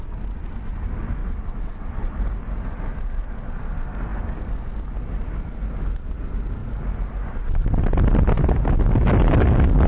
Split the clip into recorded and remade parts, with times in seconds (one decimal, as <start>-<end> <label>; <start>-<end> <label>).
0.0-1.2 recorded; 1.2-2.2 remade; 2.2-9.9 recorded